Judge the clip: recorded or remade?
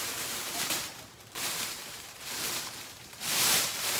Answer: remade